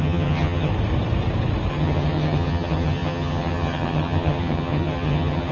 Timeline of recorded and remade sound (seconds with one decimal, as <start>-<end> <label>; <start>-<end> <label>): 0.0-0.7 remade; 0.7-1.7 recorded; 1.7-5.5 remade